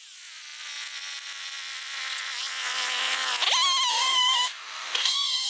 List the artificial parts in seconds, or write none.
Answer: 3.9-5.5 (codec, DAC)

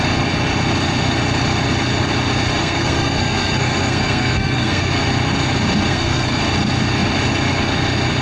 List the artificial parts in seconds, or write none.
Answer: 2.6-4.9 (codec, SNAC); 5.9-6.4

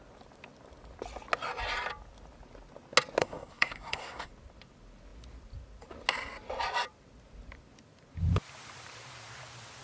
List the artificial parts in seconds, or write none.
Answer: 3.2-4.3 (codec, SNAC)

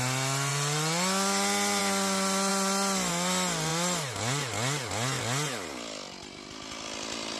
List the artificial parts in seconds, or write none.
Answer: none

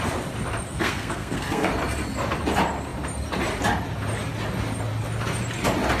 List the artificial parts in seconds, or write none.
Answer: 0.7-1.7 (codec, SNAC)

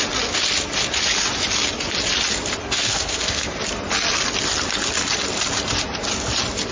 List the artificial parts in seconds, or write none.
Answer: 2.6-3.5 (codec, SNAC)

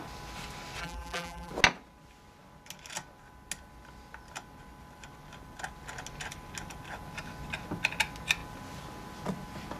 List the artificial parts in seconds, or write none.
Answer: 0.8-1.5 (vocoder, BigVGAN v2)